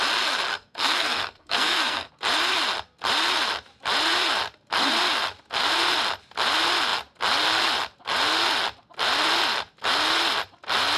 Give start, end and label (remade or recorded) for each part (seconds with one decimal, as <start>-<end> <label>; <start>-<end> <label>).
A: 0.0-0.5 recorded; 0.5-2.1 remade; 2.1-11.0 recorded